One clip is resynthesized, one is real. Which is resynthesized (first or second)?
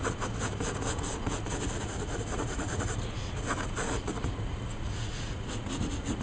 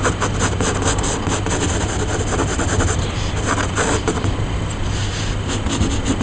first